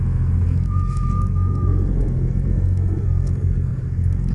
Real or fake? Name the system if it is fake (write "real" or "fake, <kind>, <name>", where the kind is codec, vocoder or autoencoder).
fake, codec, SNAC